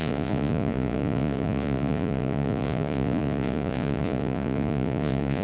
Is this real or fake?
fake